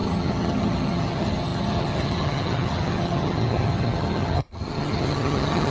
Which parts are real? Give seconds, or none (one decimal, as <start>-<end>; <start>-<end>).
none